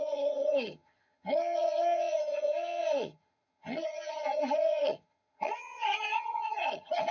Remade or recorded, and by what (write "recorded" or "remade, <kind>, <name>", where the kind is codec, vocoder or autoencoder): remade, vocoder, HiFi-GAN